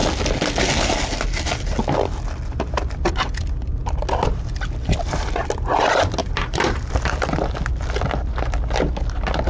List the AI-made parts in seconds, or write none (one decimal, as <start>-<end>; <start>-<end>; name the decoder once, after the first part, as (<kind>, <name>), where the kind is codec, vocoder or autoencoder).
6.2-6.9 (vocoder, BigVGAN v2)